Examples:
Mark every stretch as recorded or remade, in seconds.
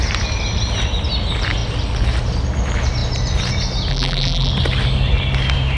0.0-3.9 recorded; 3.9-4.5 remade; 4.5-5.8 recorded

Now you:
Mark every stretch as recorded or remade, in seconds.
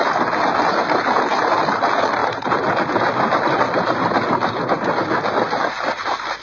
0.0-2.2 recorded; 2.2-2.7 remade; 2.7-6.4 recorded